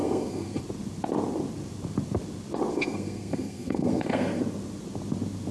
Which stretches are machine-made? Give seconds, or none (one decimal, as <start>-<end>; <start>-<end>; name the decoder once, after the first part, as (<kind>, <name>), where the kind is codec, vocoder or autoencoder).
0.0-0.6 (codec, SNAC); 2.7-4.4